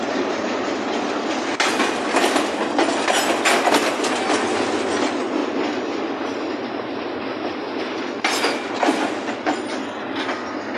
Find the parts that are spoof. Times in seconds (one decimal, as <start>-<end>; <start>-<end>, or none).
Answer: none